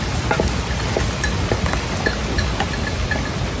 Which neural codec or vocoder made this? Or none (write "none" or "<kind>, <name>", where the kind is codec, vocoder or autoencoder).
none